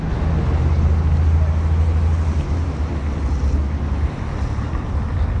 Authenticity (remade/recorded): recorded